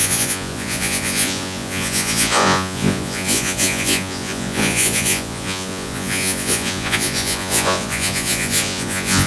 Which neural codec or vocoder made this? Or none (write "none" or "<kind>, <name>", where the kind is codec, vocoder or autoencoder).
vocoder, Vocos